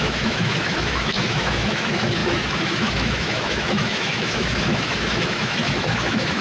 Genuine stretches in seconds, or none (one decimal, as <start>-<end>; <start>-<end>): none